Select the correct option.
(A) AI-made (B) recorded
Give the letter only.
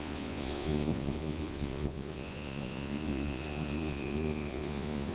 A